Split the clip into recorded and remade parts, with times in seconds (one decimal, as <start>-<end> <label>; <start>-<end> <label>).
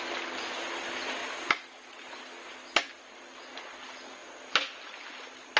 0.0-5.6 recorded